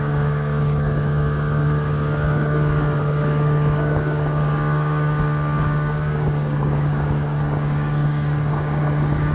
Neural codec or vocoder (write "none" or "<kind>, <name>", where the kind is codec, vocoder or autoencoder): codec, DAC